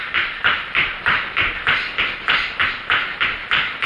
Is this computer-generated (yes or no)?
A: no